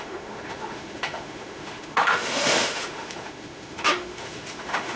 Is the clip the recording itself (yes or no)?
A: no